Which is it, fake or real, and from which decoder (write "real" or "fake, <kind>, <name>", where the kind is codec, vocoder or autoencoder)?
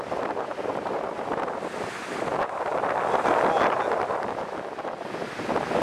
real